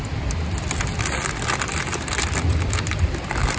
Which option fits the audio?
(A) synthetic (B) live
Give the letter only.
B